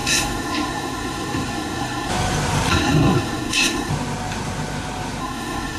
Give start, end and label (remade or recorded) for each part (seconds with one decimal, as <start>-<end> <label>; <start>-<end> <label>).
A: 0.0-2.1 remade; 2.1-2.7 recorded; 2.7-3.9 remade; 3.9-5.2 recorded; 5.2-5.8 remade